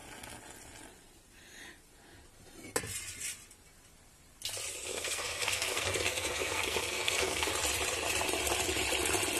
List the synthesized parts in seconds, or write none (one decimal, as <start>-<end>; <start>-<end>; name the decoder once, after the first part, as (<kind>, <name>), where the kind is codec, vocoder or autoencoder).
4.9-7.5 (codec, SNAC)